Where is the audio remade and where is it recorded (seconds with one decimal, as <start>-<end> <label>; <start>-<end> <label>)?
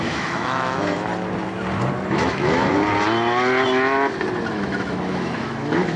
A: 0.0-1.1 remade; 1.1-2.1 recorded; 2.1-2.7 remade; 2.7-4.5 recorded; 4.5-6.0 remade